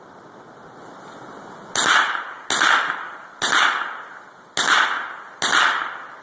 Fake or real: real